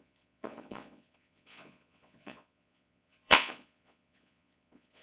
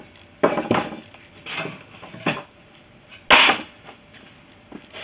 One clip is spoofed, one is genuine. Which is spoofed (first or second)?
first